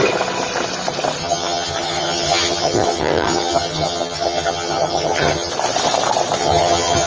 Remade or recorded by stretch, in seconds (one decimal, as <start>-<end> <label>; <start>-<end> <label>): 0.0-1.2 recorded; 1.2-5.5 remade; 5.5-6.4 recorded; 6.4-7.1 remade